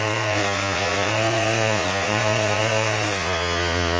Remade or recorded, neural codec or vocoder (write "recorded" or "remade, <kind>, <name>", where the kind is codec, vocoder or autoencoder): remade, vocoder, Vocos